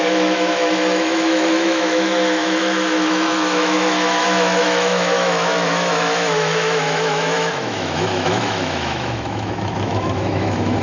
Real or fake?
fake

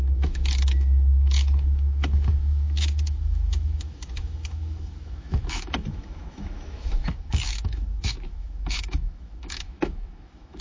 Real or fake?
fake